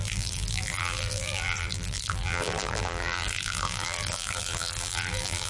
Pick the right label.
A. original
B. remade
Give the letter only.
B